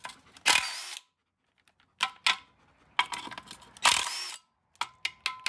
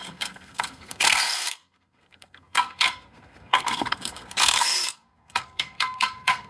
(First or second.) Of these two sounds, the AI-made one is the second